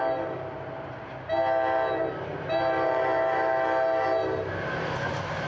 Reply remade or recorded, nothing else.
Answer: recorded